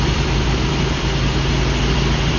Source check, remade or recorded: remade